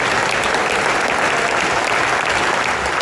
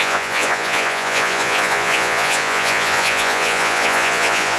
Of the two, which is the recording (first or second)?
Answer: first